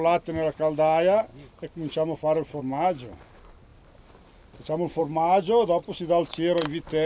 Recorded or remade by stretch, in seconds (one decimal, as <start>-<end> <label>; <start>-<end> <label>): 0.0-7.1 recorded